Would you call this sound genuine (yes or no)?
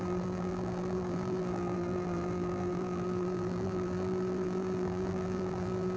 no